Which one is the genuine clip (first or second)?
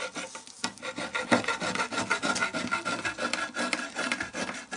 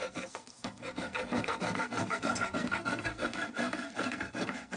first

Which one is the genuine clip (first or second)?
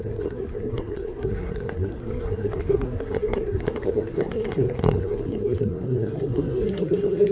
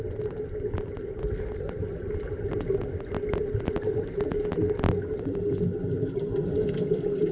second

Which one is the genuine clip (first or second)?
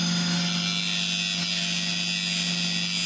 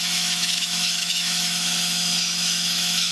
first